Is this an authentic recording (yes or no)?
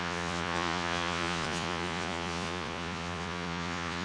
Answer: no